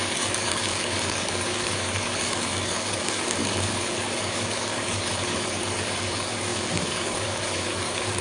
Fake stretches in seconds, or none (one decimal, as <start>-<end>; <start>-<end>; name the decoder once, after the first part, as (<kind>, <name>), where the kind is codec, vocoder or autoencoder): 0.0-8.2 (codec, DAC)